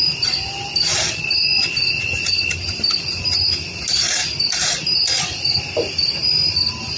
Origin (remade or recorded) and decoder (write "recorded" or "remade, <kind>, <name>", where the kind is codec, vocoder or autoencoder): recorded